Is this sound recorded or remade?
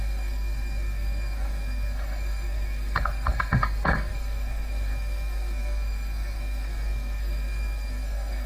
remade